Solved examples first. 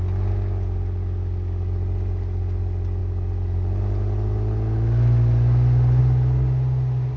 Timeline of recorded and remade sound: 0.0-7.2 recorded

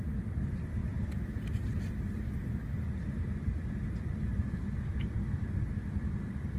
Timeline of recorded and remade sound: 0.0-6.6 recorded